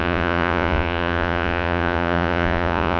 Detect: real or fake fake